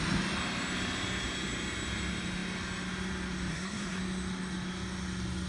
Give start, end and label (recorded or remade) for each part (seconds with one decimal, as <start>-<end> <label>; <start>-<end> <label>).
0.0-3.5 recorded; 3.5-4.0 remade; 4.0-5.5 recorded